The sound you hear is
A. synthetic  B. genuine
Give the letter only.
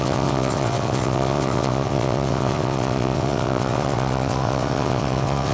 A